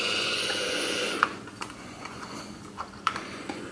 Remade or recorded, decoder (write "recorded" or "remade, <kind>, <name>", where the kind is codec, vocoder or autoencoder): remade, vocoder, Vocos